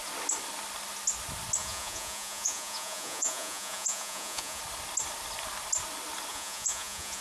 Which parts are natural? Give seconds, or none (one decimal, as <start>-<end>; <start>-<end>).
0.0-1.6; 4.6-6.3